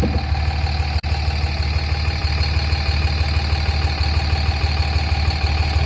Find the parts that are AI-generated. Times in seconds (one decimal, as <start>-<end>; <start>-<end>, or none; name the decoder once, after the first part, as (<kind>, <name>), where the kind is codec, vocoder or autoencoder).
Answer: none